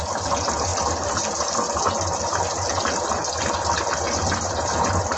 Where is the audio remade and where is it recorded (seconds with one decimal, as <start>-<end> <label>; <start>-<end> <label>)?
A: 0.0-5.2 recorded